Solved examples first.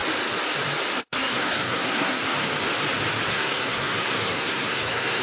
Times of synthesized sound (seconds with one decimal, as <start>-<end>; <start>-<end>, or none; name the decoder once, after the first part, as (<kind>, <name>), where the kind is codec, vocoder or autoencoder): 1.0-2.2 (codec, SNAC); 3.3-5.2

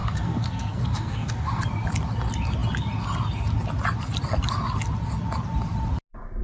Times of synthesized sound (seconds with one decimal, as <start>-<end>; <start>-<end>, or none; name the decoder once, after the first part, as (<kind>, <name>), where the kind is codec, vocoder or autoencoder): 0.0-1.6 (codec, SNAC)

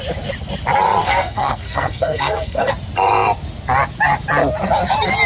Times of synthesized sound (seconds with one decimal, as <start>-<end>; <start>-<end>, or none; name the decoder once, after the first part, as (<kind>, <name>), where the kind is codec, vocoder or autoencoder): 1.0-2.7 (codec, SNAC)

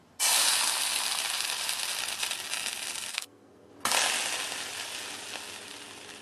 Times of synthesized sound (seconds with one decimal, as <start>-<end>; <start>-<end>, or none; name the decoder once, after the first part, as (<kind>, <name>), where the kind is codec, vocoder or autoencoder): 3.1-3.7 (codec, SNAC)

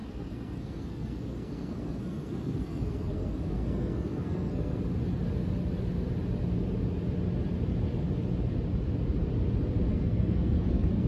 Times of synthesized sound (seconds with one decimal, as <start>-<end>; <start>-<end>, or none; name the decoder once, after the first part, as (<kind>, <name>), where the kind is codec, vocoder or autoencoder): 0.0-4.8 (codec, SNAC); 9.9-11.1

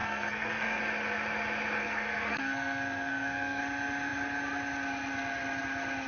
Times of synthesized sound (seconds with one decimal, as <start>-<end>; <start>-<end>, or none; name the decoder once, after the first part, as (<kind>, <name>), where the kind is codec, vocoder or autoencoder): 0.0-0.8 (codec, SNAC); 1.8-3.6

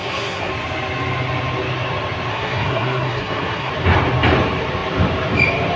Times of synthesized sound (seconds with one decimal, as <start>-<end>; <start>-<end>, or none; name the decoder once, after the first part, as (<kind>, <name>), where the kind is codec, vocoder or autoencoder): 0.0-0.5 (codec, SNAC); 2.3-3.7

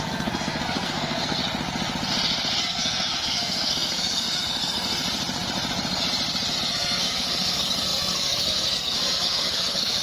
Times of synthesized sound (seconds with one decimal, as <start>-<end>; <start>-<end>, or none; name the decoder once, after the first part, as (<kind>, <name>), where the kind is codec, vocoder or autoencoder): 0.0-1.4 (codec, SNAC); 2.6-5.0; 6.7-10.0